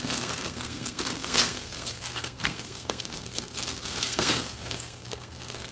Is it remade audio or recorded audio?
remade